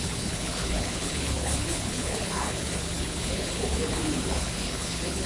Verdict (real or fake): fake